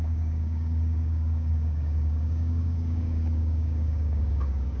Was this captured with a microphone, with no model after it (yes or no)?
no